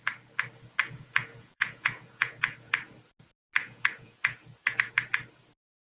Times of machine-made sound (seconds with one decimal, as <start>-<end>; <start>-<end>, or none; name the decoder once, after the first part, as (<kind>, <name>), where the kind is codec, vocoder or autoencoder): 0.8-2.7 (vocoder, Vocos); 3.6-4.9